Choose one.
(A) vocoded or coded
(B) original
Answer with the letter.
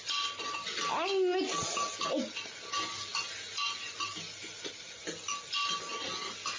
B